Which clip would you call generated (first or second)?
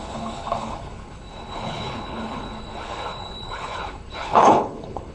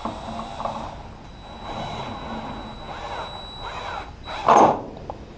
first